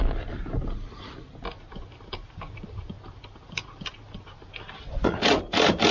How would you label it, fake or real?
fake